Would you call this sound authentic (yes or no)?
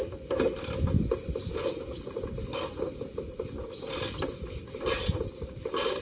yes